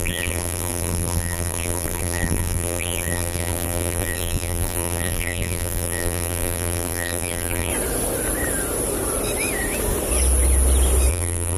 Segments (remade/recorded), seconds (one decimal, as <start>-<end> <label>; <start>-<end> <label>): 0.0-7.7 remade; 7.7-11.1 recorded; 11.1-11.6 remade